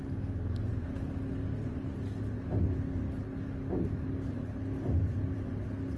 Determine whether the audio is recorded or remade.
recorded